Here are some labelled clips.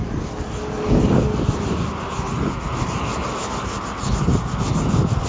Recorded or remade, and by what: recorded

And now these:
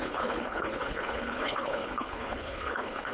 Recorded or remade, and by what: remade, codec, HILCodec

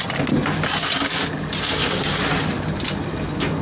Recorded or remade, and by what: recorded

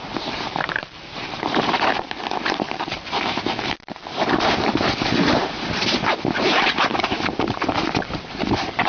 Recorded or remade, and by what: remade, vocoder, BigVGAN v2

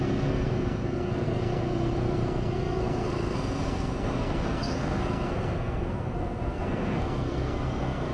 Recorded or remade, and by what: remade, codec, SNAC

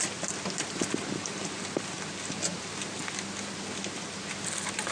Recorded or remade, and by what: recorded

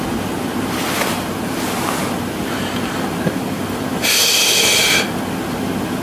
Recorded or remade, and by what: recorded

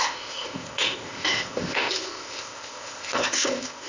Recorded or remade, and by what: remade, codec, ZipCodec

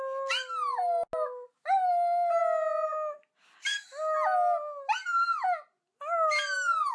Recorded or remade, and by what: recorded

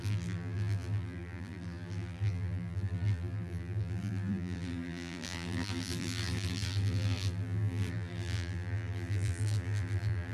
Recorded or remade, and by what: remade, vocoder, BigVGAN v2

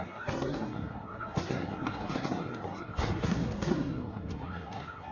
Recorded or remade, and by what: remade, codec, SNAC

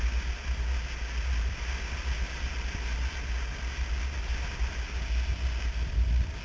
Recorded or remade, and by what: recorded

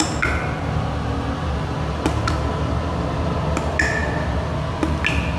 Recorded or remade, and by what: recorded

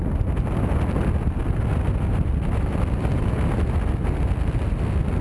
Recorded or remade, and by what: recorded